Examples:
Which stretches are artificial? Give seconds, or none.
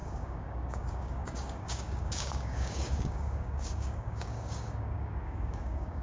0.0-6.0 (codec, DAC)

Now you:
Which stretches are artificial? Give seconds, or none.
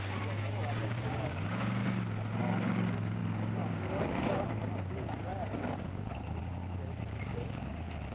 0.0-1.8 (codec, DAC); 2.4-8.1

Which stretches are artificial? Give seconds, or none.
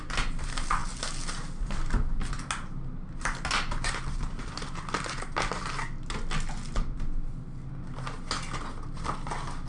none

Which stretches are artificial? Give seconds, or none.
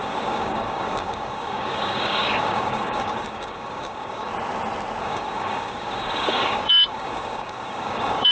0.0-4.3 (codec, DAC); 5.0-8.3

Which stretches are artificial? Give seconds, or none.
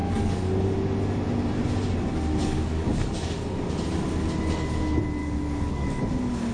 0.0-0.5 (codec, DAC); 2.4-3.6; 5.2-6.0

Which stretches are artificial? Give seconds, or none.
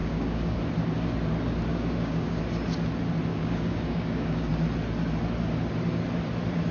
0.0-0.6 (codec, DAC); 1.7-2.4; 3.3-4.5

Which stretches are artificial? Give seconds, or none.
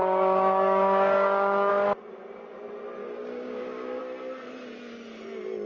0.0-1.7 (codec, DAC); 3.0-4.0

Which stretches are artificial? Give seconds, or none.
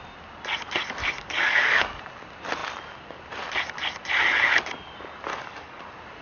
1.0-2.0 (codec, DAC); 5.3-5.8